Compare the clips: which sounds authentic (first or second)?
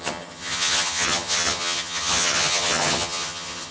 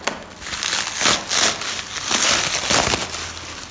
second